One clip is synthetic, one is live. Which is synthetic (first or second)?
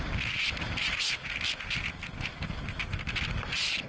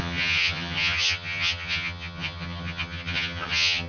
second